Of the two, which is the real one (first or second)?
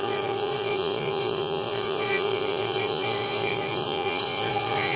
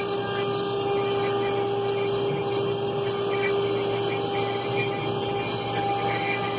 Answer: second